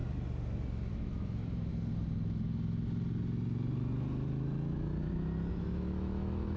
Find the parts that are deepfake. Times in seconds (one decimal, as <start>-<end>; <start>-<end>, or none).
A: 0.9-1.7; 5.5-6.6